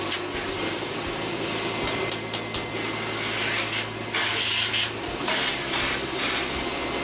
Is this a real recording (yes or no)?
yes